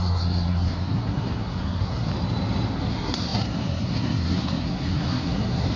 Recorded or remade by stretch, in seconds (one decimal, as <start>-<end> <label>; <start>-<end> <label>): 0.0-2.1 remade; 2.1-2.9 recorded; 2.9-5.8 remade

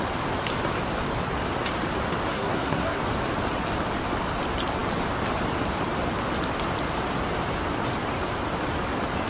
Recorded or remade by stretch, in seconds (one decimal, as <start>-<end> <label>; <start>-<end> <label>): 0.0-2.3 recorded; 2.3-3.0 remade; 3.0-9.3 recorded

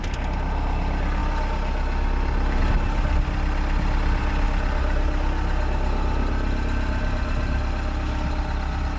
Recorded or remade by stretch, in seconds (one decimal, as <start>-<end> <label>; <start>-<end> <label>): 0.0-9.0 recorded

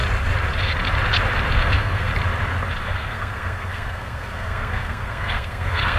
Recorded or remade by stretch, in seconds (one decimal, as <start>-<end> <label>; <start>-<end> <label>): 0.0-1.5 recorded; 1.5-2.1 remade; 2.1-2.8 recorded; 2.8-6.0 remade

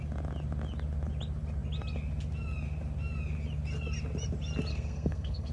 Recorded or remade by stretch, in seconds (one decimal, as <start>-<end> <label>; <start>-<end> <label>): 0.0-4.7 recorded; 4.7-5.5 remade